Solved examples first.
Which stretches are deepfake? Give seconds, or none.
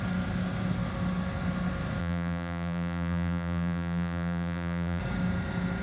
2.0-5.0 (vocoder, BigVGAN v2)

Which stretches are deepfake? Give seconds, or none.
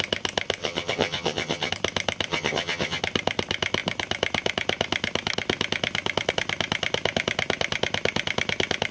0.6-1.7 (vocoder, HiFi-GAN); 2.3-3.0